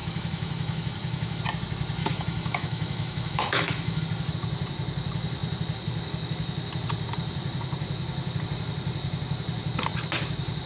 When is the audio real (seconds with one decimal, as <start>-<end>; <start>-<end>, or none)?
1.4-2.0; 4.0-10.7